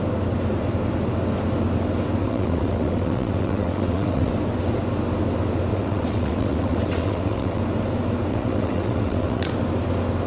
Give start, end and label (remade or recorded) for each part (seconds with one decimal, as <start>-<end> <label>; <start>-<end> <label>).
0.0-2.2 recorded; 2.2-4.3 remade; 4.3-5.7 recorded; 5.7-7.6 remade; 7.6-8.3 recorded; 8.3-9.5 remade; 9.5-10.3 recorded